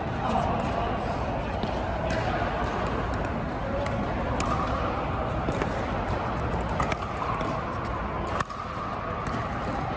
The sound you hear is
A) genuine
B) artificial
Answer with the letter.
A